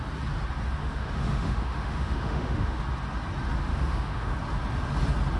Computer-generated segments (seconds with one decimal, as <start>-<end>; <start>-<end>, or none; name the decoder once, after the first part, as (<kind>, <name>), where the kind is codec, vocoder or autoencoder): 0.8-2.8 (autoencoder, DAC-VAE); 3.7-4.3